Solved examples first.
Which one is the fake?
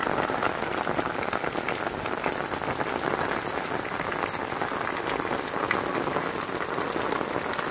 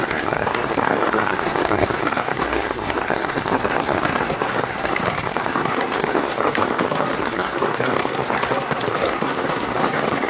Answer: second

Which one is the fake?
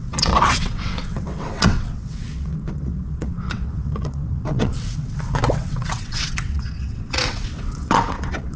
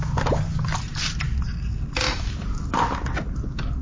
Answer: first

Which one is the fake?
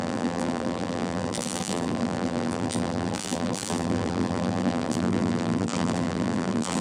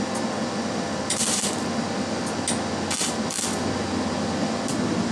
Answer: first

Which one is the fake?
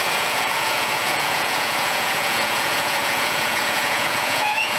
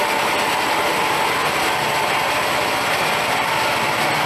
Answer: first